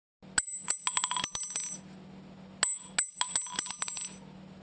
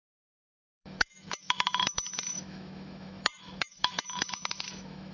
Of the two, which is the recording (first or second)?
first